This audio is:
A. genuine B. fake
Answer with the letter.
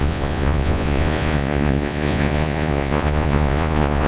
B